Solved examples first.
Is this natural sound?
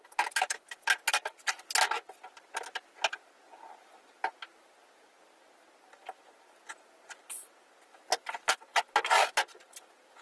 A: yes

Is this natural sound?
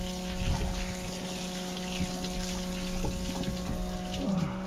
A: yes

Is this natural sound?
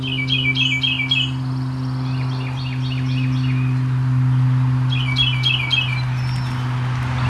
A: yes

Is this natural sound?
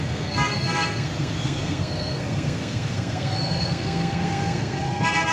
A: no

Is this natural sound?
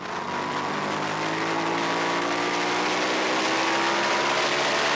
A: yes